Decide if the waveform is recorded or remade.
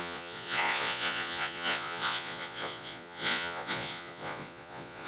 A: remade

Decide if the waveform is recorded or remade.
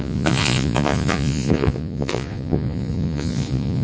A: remade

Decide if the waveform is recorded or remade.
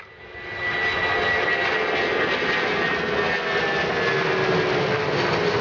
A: recorded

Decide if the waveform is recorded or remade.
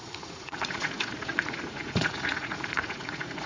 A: remade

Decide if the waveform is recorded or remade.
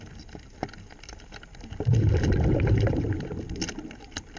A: recorded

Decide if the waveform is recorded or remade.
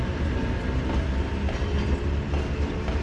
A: recorded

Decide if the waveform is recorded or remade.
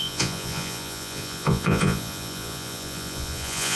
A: remade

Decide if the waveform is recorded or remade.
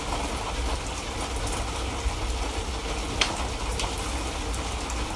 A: recorded